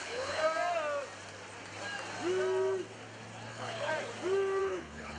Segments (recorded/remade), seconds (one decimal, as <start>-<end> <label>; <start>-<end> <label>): 0.0-0.4 remade; 0.4-3.5 recorded; 3.5-3.9 remade; 3.9-4.6 recorded; 4.6-5.2 remade